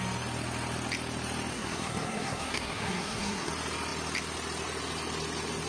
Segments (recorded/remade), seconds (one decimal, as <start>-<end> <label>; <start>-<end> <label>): 0.0-1.5 recorded; 1.5-3.5 remade; 3.5-5.7 recorded